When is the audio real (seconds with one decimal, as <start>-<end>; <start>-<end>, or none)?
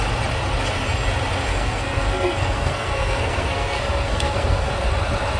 0.0-1.5; 4.7-5.4